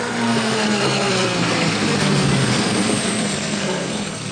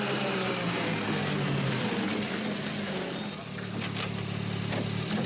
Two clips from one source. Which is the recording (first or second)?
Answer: second